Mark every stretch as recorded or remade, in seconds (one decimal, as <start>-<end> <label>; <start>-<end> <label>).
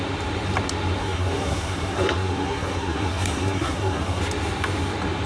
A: 0.0-1.0 recorded; 1.0-4.2 remade; 4.2-5.3 recorded